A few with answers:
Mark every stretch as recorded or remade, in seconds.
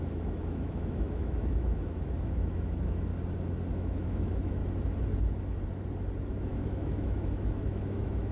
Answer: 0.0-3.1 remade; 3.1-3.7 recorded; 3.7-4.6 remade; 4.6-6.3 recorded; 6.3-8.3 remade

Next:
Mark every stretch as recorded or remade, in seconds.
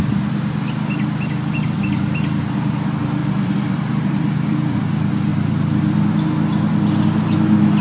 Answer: 0.0-3.2 recorded; 3.2-4.8 remade; 4.8-7.8 recorded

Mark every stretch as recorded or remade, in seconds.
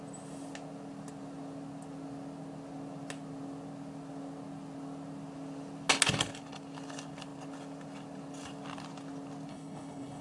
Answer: 0.0-9.5 recorded; 9.5-10.2 remade